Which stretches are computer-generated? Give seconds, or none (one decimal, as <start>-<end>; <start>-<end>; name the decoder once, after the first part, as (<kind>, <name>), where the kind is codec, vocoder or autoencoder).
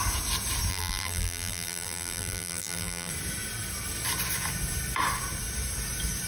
0.7-3.1 (vocoder, BigVGAN v2)